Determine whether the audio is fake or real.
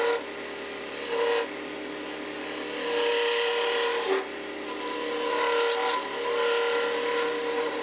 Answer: real